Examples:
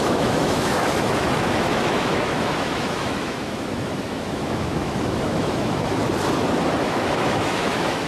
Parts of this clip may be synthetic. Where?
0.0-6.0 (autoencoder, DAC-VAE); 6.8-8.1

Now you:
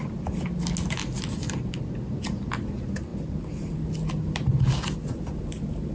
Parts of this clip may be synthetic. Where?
none

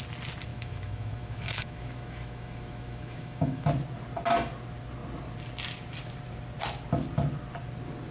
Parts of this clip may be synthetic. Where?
0.5-3.7 (autoencoder, DAC-VAE)

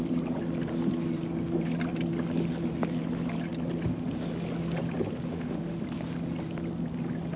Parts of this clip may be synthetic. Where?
5.3-5.8 (autoencoder, DAC-VAE)